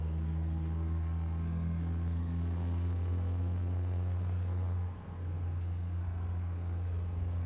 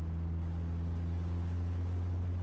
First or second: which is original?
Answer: second